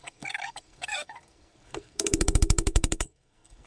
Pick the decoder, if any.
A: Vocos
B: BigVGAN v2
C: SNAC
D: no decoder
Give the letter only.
C